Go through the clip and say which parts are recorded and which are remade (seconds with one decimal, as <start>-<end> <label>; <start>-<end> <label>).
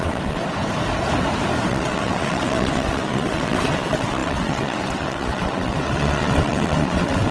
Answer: 0.0-0.4 remade; 0.4-1.7 recorded; 1.7-7.3 remade